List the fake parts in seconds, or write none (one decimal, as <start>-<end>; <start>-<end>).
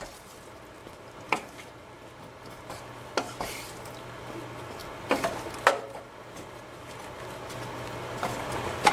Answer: 0.8-2.7